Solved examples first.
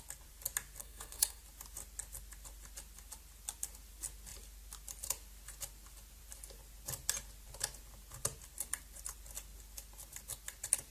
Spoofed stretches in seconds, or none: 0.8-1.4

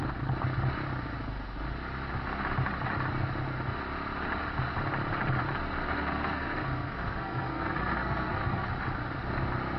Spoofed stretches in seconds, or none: 5.8-8.7

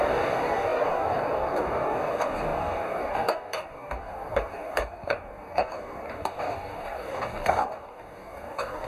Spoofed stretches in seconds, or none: 0.0-8.9

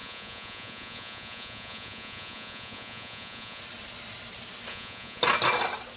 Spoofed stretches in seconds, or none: 0.0-3.6; 4.7-5.2